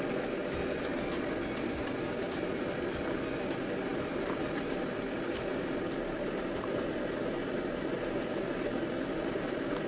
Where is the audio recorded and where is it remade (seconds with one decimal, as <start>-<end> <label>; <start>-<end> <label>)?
0.0-9.9 recorded